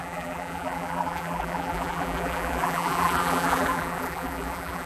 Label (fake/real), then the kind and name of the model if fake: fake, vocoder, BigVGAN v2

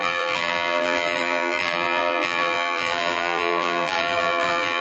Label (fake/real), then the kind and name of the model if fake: fake, vocoder, BigVGAN v2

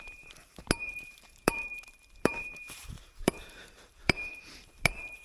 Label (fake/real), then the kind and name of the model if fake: fake, vocoder, BigVGAN v2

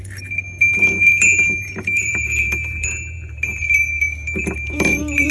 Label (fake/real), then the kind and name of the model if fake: fake, vocoder, BigVGAN v2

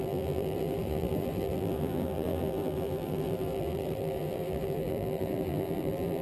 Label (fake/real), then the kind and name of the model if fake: fake, vocoder, BigVGAN v2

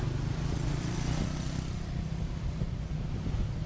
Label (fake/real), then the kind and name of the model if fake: real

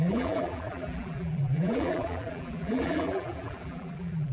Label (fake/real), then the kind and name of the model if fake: fake, vocoder, BigVGAN v2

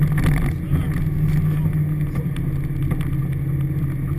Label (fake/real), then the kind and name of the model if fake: real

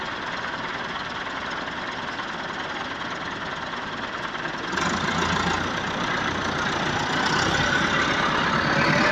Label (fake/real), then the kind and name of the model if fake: real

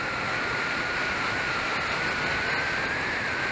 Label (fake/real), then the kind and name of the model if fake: real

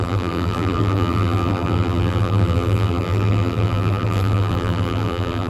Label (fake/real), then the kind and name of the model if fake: fake, vocoder, BigVGAN v2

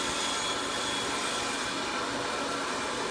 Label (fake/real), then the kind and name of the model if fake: real